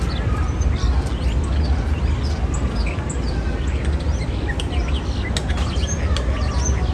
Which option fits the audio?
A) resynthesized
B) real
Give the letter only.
B